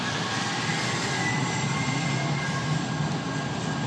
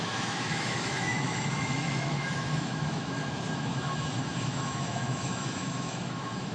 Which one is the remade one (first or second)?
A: second